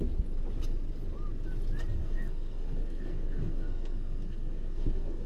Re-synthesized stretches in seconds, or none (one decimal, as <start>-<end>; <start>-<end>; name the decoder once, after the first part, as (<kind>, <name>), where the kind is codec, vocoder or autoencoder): 2.0-5.3 (codec, SNAC)